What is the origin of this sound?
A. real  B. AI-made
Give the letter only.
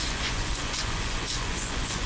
B